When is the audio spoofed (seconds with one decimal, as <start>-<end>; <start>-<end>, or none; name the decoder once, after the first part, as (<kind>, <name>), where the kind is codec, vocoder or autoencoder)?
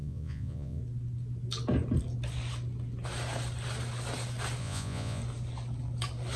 0.0-0.8 (vocoder, Vocos); 4.6-5.2